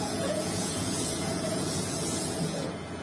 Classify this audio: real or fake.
fake